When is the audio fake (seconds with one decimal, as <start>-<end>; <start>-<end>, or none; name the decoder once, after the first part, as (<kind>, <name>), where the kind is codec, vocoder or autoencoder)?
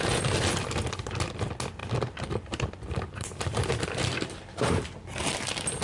1.8-5.3 (vocoder, BigVGAN v2)